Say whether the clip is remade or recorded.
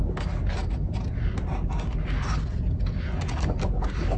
recorded